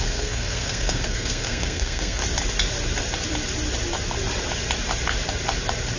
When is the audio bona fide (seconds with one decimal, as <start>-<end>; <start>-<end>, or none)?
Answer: 2.2-6.0